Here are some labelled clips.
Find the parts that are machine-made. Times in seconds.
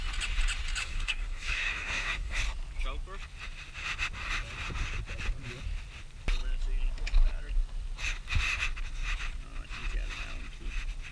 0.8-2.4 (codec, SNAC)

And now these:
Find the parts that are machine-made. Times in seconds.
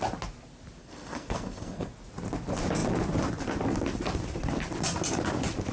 0.8-1.9 (codec, SNAC)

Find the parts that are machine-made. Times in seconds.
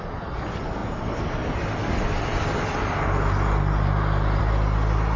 none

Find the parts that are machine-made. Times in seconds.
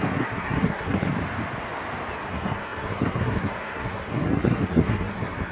0.0-1.1 (codec, SNAC); 2.3-5.5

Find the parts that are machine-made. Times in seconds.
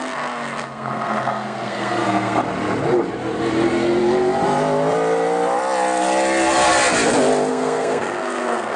0.0-2.4 (codec, SNAC); 7.5-8.8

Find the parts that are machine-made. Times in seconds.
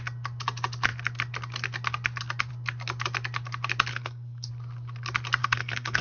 3.9-4.5 (codec, SNAC); 5.4-6.0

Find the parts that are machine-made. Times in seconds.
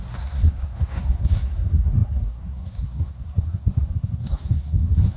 0.0-5.2 (codec, SNAC)